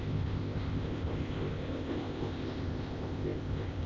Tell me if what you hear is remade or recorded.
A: remade